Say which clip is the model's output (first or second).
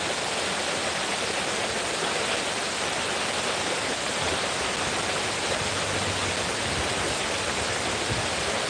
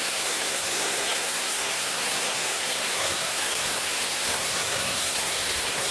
second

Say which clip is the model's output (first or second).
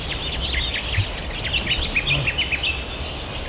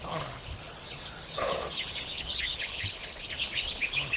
second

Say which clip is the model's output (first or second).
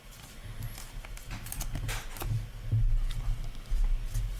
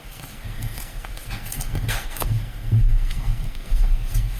second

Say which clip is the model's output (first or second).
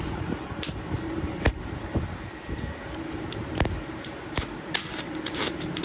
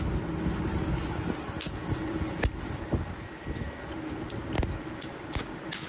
first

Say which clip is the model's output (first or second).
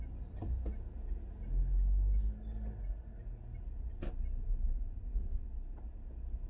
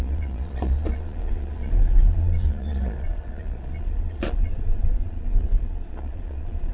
second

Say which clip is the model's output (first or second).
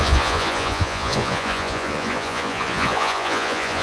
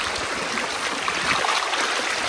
first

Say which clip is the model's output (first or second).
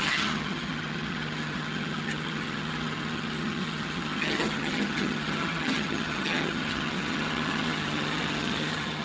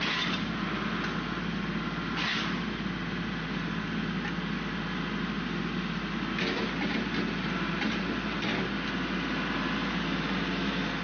first